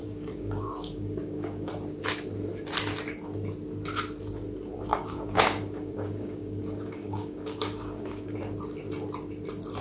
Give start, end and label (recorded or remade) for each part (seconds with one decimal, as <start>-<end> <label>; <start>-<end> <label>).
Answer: 0.0-1.7 remade; 1.7-4.9 recorded; 4.9-8.4 remade; 8.4-9.8 recorded